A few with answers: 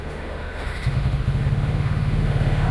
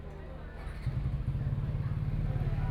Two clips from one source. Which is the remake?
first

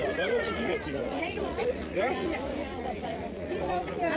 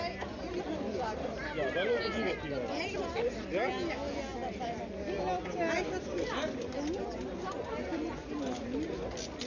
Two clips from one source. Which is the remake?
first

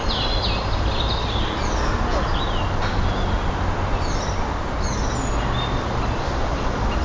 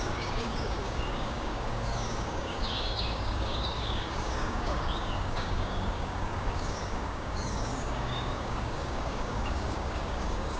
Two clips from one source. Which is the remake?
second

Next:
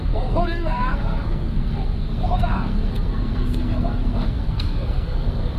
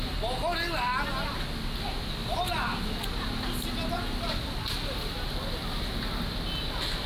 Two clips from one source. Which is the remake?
first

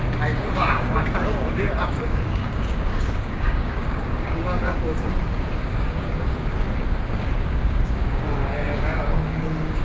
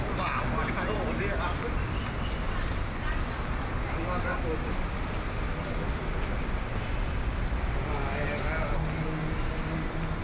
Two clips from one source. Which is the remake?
first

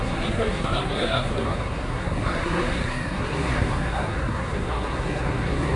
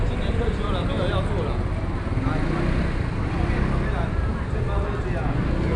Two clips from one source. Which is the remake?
first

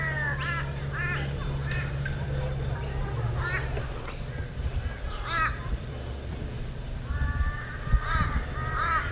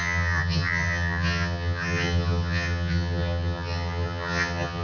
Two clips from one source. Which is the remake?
second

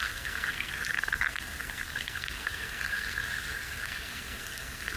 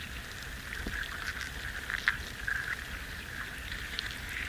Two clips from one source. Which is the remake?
first